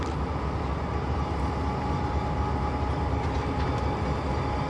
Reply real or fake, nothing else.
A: real